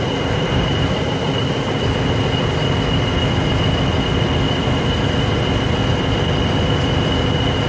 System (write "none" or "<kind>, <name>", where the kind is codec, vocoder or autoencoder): none